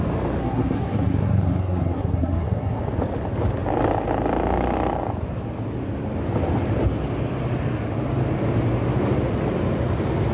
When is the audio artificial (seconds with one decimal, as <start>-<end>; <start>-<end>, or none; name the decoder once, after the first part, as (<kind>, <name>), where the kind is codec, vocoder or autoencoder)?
0.4-2.8 (codec, SNAC)